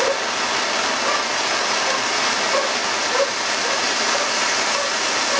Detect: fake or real real